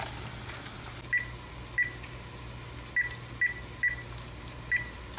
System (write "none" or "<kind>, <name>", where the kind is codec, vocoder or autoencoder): none